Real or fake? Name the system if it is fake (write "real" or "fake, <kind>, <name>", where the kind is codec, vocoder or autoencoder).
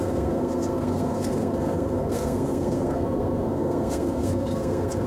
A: fake, codec, SNAC